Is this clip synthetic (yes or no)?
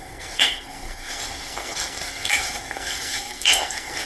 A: yes